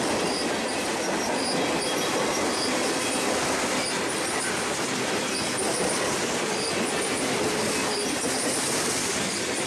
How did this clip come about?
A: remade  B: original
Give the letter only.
B